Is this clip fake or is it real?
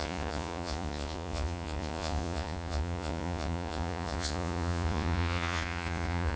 fake